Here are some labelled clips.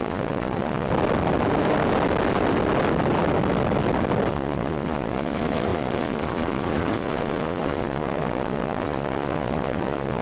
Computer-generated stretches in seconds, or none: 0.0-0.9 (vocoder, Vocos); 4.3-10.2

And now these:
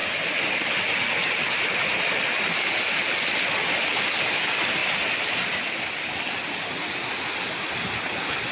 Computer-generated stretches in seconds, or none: none

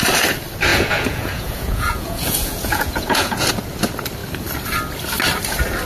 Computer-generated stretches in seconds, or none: 0.7-3.5 (vocoder, Vocos)

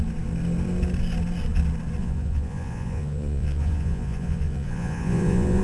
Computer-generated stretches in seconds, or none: 2.0-5.6 (vocoder, Vocos)

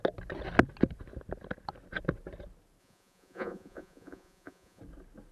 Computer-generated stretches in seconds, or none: 2.8-4.8 (vocoder, Vocos)